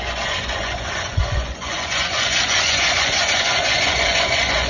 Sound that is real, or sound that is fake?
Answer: fake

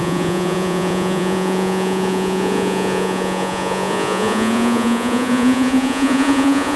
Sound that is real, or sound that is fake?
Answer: fake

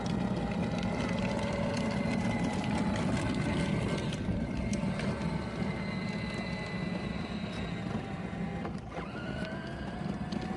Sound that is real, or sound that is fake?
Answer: real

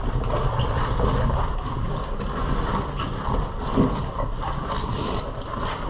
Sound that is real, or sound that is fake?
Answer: real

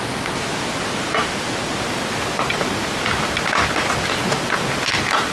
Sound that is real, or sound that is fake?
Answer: real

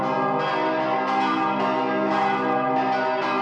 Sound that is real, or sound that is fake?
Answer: real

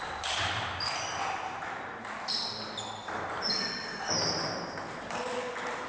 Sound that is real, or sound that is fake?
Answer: real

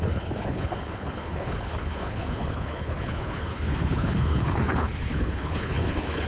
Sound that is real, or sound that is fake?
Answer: fake